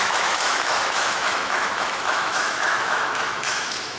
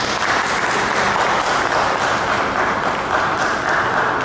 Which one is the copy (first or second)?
first